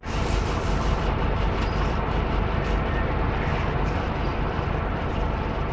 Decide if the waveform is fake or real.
real